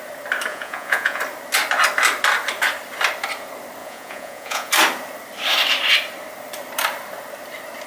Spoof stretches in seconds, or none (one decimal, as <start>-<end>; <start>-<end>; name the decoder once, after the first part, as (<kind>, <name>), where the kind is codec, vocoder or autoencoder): 0.5-1.2 (vocoder, Vocos); 3.8-4.7